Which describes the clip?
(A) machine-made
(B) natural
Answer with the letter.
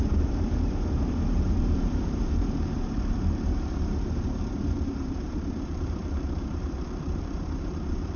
A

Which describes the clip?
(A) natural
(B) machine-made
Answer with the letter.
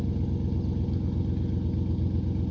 A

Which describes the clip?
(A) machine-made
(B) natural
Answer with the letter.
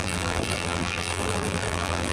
A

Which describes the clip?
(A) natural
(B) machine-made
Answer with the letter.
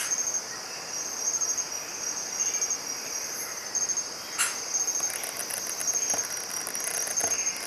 A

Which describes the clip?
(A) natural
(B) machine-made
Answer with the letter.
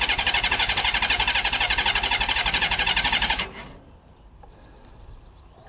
B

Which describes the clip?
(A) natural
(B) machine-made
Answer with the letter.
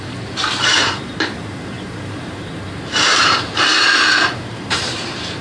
B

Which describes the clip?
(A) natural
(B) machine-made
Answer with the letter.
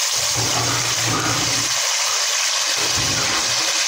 A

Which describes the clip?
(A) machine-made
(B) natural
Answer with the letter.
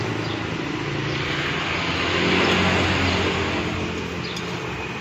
B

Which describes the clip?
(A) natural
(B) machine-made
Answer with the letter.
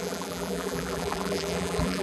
B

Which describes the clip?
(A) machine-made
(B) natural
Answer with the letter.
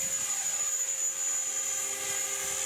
B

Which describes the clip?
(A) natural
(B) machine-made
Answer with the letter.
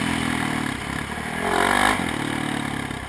A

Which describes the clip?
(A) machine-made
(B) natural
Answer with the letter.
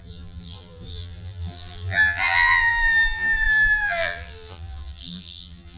A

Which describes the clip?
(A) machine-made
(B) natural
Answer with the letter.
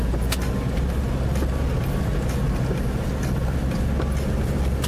B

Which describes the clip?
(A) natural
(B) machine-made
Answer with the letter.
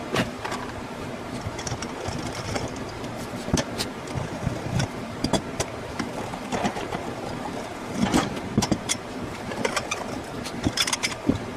B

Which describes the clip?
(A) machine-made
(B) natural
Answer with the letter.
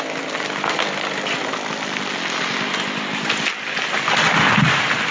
B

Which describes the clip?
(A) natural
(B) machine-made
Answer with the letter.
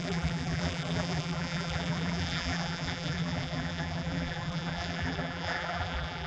B